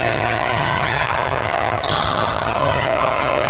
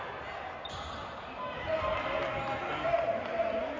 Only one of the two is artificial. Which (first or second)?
first